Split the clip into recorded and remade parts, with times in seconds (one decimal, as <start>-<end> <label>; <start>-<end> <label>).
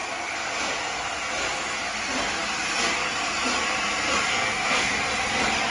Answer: 0.0-4.3 recorded; 4.3-4.9 remade; 4.9-5.7 recorded